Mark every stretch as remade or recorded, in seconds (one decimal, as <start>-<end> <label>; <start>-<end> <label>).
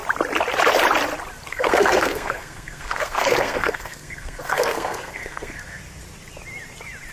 0.0-1.5 recorded; 1.5-5.8 remade; 5.8-7.1 recorded